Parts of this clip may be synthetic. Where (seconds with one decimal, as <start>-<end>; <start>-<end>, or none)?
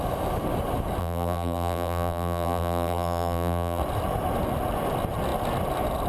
1.0-3.8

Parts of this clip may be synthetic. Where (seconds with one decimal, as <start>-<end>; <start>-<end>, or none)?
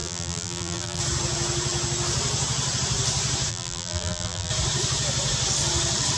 0.0-1.0; 3.5-4.5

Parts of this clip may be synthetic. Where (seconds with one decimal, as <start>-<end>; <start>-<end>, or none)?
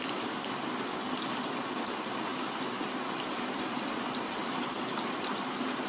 none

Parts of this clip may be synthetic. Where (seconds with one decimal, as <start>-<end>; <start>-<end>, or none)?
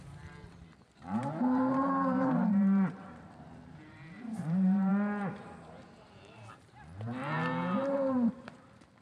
0.0-4.9; 5.4-9.0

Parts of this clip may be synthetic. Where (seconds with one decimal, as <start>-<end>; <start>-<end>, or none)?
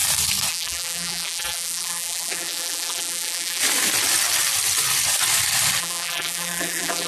0.5-3.6; 5.8-7.1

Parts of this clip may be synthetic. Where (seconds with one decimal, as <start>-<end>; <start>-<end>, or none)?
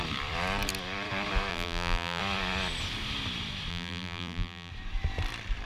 1.5-2.2; 3.7-4.7